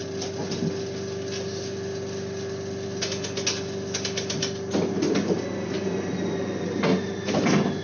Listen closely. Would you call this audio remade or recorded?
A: recorded